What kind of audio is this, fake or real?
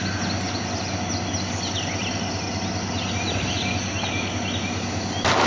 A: real